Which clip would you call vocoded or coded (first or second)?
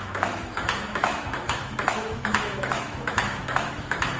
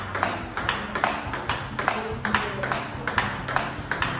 first